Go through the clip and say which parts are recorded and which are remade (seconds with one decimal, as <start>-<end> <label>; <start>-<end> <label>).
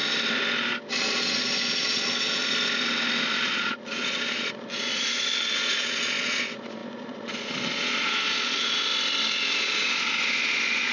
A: 0.0-1.0 recorded; 1.0-2.4 remade; 2.4-3.3 recorded; 3.3-8.9 remade; 8.9-9.6 recorded; 9.6-10.9 remade